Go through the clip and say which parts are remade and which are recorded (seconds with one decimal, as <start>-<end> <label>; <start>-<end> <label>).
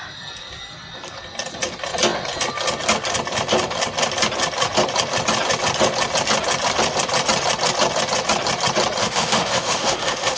0.0-9.0 recorded; 9.0-10.4 remade